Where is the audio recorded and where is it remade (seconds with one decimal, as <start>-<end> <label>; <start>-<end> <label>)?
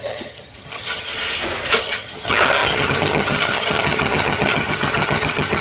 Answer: 0.0-1.1 remade; 1.1-1.8 recorded; 1.8-5.6 remade